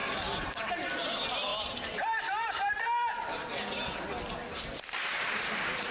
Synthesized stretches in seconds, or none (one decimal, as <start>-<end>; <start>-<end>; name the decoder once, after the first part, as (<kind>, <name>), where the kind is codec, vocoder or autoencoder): 0.0-0.7 (vocoder, BigVGAN v2); 1.5-3.1; 5.0-5.9